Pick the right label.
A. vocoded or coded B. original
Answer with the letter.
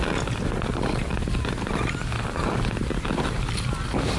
B